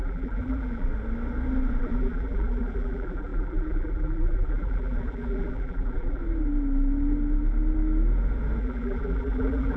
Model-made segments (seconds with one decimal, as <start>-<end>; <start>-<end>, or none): 0.0-0.9; 1.8-6.2; 8.6-9.8